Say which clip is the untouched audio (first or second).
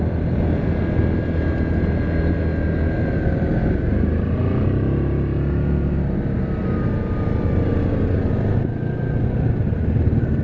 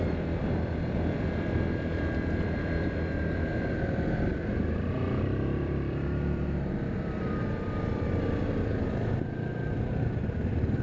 first